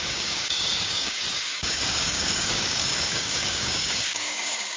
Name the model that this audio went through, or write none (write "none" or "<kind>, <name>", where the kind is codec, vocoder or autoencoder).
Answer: codec, DAC